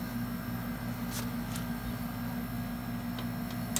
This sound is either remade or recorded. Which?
recorded